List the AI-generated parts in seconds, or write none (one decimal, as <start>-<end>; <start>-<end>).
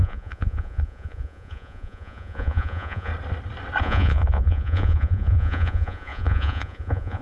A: 0.0-3.1; 3.8-7.2